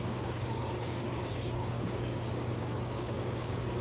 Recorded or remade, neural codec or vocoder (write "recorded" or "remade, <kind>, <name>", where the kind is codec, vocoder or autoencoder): remade, codec, DAC